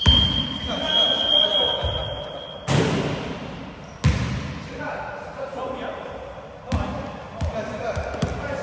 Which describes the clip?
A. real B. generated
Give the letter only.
A